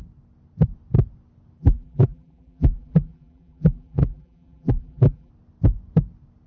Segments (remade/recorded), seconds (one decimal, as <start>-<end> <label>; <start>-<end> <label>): 0.0-1.6 recorded; 1.6-5.3 remade; 5.3-6.5 recorded